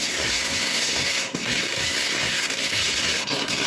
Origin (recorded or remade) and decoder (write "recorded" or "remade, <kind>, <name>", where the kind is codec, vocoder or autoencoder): remade, codec, SNAC